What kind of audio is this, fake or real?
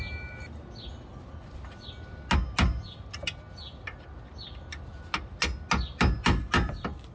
real